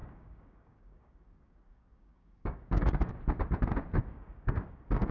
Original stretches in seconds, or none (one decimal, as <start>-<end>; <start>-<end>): 3.1-4.0